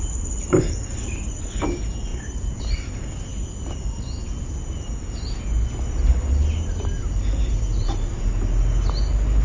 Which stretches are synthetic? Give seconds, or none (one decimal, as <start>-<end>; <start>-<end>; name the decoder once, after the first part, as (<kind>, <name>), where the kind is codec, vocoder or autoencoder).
2.1-2.6 (vocoder, BigVGAN v2); 7.0-8.3